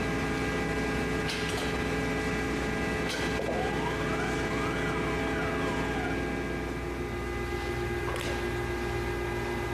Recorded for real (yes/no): yes